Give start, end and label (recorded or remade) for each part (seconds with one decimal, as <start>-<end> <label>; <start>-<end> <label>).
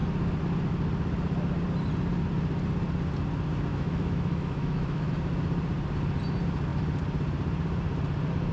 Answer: 0.0-3.7 recorded; 3.7-5.1 remade; 5.1-8.5 recorded